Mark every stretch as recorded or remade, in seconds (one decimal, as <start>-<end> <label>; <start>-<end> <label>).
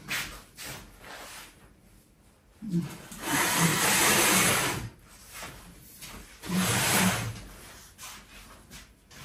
0.0-3.7 recorded; 3.7-7.0 remade; 7.0-9.2 recorded